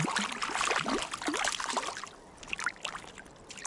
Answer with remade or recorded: recorded